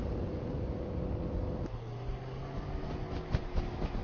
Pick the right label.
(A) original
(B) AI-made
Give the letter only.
A